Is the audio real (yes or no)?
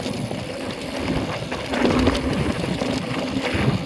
yes